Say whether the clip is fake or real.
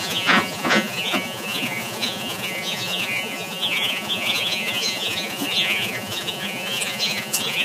fake